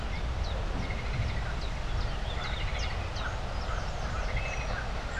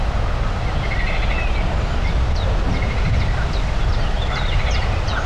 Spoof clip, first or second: second